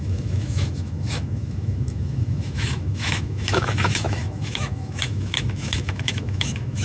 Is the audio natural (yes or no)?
no